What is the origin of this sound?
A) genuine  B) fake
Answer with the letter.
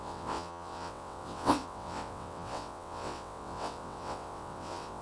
B